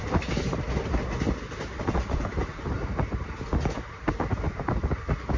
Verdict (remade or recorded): recorded